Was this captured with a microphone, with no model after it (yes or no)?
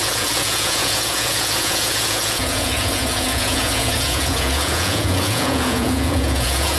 no